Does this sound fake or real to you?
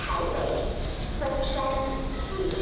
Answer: real